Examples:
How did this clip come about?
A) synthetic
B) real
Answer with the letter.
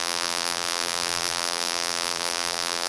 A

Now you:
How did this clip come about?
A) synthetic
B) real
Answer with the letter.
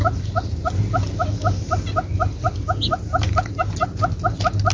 B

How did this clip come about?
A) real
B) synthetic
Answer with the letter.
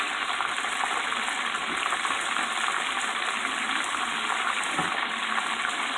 A